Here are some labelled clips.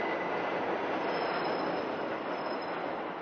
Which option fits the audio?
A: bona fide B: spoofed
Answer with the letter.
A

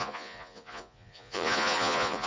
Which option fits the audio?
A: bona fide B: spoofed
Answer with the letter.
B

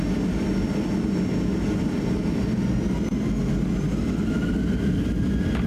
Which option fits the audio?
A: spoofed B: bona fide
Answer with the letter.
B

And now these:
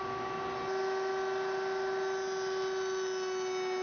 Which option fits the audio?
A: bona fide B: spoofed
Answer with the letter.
A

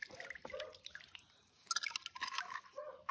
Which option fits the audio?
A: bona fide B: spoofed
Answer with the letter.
A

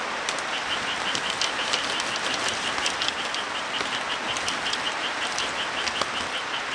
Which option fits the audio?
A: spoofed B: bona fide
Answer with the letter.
B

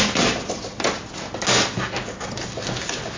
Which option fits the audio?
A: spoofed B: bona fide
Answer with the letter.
B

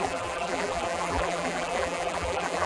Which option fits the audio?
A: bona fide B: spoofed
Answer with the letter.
B